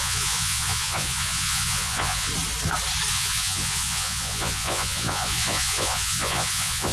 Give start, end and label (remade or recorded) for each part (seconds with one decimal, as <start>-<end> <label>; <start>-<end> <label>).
0.0-2.3 remade; 2.3-3.1 recorded; 3.1-6.9 remade